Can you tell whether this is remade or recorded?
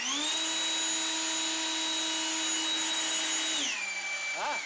recorded